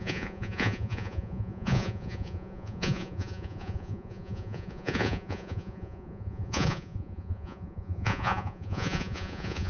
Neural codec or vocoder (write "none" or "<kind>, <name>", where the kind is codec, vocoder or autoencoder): vocoder, Vocos